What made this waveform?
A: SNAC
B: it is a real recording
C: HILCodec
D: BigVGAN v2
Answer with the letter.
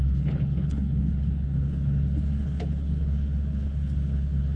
C